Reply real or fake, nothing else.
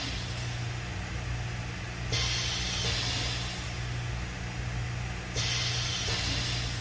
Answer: real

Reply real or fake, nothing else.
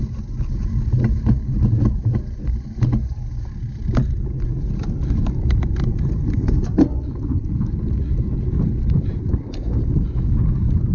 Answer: real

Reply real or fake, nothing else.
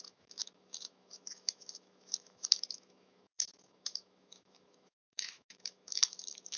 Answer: fake